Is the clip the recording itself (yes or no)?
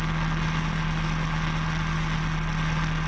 yes